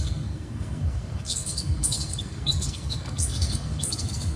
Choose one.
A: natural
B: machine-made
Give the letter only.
B